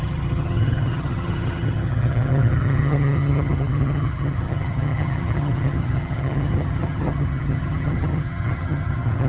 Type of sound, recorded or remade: remade